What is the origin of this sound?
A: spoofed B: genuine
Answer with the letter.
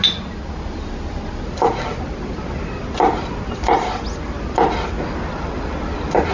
B